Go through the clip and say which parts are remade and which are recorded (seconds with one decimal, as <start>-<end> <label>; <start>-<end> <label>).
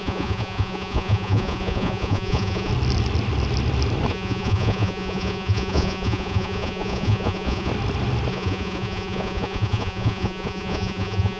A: 0.0-2.7 remade; 2.7-4.1 recorded; 4.1-7.7 remade; 7.7-8.3 recorded; 8.3-11.4 remade